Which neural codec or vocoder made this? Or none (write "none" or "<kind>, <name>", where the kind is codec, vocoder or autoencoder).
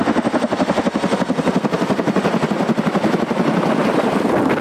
none